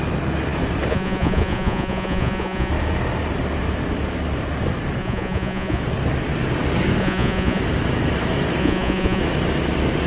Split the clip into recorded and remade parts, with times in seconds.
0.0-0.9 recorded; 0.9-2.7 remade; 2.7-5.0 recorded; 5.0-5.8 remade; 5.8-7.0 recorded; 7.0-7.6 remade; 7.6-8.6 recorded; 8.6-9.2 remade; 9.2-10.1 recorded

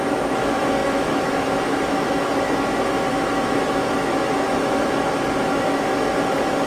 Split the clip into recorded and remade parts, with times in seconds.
0.0-5.9 remade; 5.9-6.7 recorded

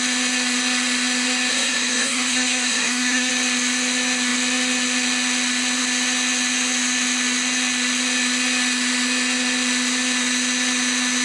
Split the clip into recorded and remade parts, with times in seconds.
0.0-1.5 recorded; 1.5-3.3 remade; 3.3-11.2 recorded

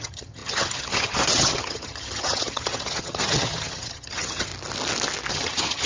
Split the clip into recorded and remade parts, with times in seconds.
0.0-4.5 remade; 4.5-5.3 recorded; 5.3-5.9 remade